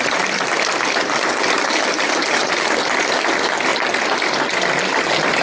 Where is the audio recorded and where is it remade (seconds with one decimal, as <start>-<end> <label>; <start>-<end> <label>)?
0.0-5.4 recorded